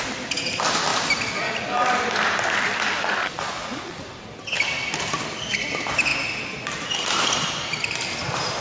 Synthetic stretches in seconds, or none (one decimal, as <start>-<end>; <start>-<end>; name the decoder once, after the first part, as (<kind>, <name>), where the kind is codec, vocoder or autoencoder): 3.2-4.0 (vocoder, Vocos)